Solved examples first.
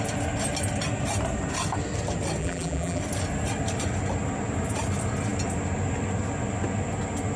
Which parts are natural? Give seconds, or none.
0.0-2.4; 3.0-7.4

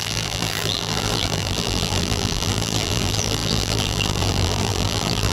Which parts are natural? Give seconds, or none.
none

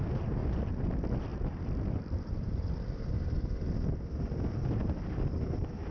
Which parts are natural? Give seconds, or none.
0.0-1.3; 4.8-5.9